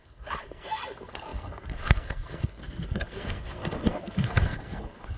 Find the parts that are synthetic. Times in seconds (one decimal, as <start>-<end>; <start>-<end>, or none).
0.0-5.2